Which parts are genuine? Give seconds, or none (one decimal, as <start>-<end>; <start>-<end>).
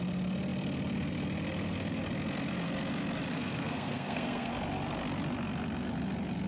0.0-3.3; 4.5-6.5